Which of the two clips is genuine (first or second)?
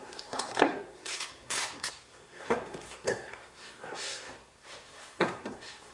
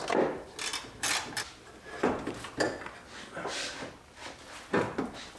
second